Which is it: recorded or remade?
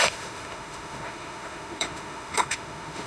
remade